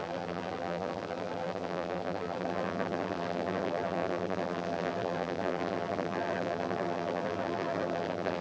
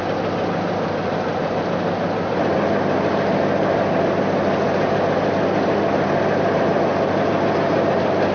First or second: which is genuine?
second